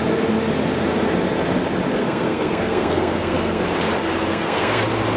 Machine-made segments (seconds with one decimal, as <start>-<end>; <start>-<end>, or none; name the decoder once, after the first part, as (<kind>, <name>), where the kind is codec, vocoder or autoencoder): 1.9-3.6 (codec, SNAC); 4.3-4.8